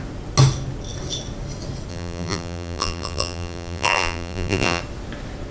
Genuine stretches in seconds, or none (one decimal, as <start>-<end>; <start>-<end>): 0.0-1.9; 4.8-5.5